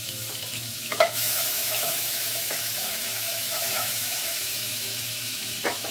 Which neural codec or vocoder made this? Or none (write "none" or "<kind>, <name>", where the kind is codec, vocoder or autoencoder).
autoencoder, DAC-VAE